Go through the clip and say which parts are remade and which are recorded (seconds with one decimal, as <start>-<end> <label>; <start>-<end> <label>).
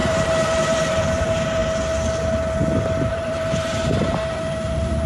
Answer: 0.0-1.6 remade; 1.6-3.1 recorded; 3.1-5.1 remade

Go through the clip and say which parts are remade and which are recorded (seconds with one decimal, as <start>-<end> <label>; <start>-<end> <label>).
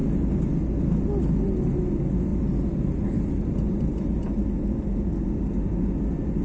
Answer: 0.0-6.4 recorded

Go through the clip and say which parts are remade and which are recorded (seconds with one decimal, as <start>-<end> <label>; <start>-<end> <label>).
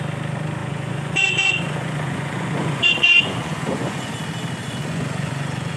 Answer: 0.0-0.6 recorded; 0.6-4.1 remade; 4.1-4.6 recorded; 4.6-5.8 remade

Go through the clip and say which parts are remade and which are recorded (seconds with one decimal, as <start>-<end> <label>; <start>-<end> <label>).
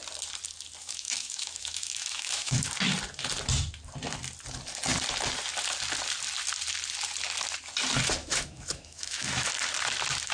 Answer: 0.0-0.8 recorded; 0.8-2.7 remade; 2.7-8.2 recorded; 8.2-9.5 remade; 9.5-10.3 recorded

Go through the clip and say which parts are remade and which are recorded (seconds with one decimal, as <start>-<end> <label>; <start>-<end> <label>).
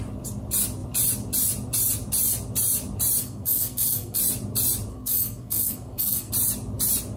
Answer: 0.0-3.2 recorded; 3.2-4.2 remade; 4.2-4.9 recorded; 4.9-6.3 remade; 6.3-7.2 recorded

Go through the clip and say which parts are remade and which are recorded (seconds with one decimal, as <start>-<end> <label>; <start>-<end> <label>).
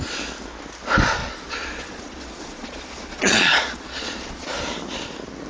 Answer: 0.0-1.2 recorded; 1.2-4.5 remade; 4.5-5.5 recorded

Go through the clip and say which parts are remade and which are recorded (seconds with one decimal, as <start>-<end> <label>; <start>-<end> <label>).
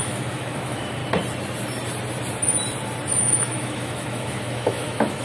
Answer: 0.0-1.0 remade; 1.0-3.2 recorded; 3.2-5.2 remade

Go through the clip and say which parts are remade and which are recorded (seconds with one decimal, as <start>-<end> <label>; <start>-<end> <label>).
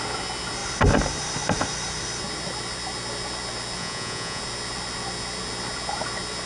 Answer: 0.0-3.8 recorded; 3.8-4.4 remade; 4.4-6.5 recorded